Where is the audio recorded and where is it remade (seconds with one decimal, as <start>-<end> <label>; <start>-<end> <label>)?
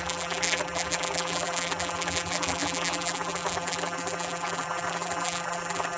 0.0-6.0 remade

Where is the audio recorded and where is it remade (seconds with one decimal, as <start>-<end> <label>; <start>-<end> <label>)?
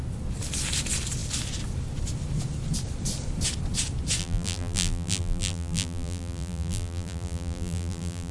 0.0-4.2 recorded; 4.2-8.3 remade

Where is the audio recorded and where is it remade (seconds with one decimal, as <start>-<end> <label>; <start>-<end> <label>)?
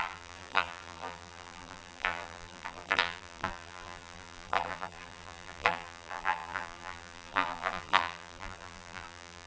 0.0-9.5 remade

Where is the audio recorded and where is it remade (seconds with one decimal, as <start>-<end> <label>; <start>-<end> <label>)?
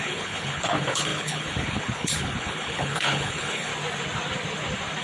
0.0-3.7 remade; 3.7-5.0 recorded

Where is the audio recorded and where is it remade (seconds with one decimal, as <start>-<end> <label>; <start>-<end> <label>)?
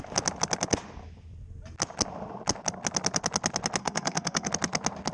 0.0-3.8 recorded; 3.8-4.5 remade; 4.5-5.1 recorded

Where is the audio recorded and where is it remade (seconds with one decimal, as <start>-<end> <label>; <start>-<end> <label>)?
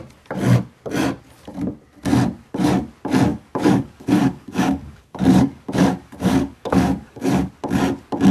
0.0-3.3 recorded; 3.3-7.5 remade; 7.5-8.3 recorded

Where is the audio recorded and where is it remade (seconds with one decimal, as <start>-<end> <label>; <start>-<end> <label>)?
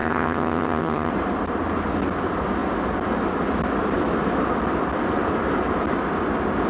0.0-1.1 remade; 1.1-6.7 recorded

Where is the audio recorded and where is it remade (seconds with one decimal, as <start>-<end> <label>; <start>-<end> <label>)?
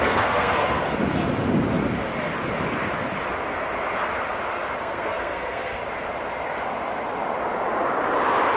0.0-0.8 remade; 0.8-4.8 recorded; 4.8-5.8 remade; 5.8-8.6 recorded